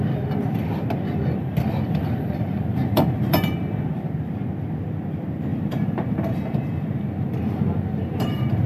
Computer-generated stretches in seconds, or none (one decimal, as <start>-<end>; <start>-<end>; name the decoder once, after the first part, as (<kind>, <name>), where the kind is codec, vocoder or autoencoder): 2.7-4.1 (vocoder, BigVGAN v2); 5.5-8.7